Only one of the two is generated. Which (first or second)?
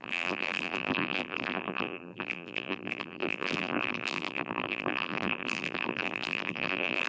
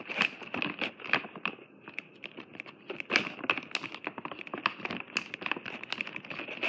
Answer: first